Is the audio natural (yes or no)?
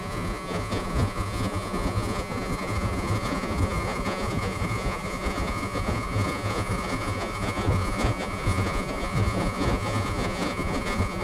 no